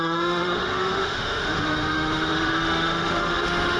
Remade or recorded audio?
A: remade